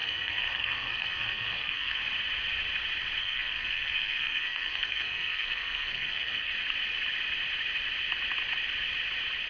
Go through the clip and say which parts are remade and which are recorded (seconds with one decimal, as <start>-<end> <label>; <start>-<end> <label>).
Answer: 0.0-2.0 remade; 2.0-3.2 recorded; 3.2-6.5 remade; 6.5-9.5 recorded